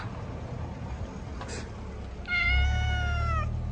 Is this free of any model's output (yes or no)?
yes